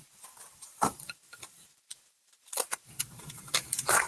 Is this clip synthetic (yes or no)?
yes